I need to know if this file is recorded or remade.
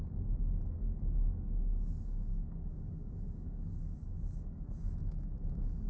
remade